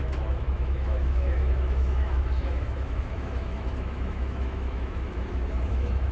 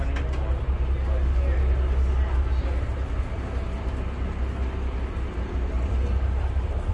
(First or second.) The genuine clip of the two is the second